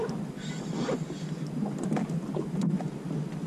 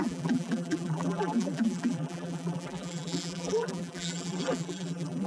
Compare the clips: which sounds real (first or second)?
first